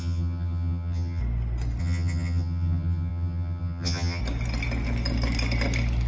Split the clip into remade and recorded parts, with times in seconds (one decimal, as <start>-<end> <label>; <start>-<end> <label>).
0.0-1.2 remade; 1.2-1.8 recorded; 1.8-4.2 remade; 4.2-6.1 recorded